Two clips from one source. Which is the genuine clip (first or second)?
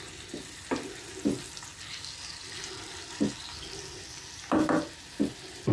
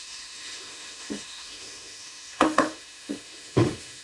first